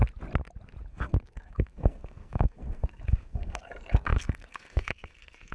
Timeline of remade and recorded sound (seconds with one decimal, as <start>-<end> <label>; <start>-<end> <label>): 0.0-0.9 recorded; 0.9-5.5 remade